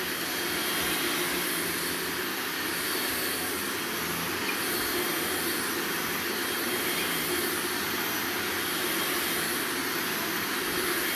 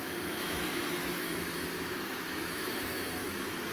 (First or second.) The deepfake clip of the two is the second